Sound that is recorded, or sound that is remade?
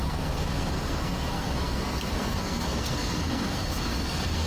remade